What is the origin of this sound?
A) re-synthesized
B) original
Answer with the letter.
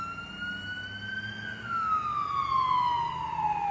B